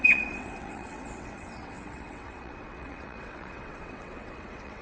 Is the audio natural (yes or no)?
no